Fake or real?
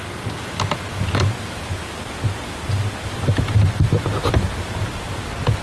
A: real